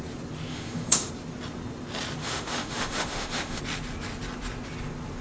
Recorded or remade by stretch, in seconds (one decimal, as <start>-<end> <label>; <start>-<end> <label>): 0.0-0.5 recorded; 0.5-1.1 remade; 1.1-2.2 recorded; 2.2-3.6 remade; 3.6-5.2 recorded